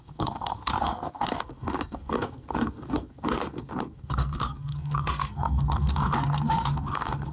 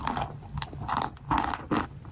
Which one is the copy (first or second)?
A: first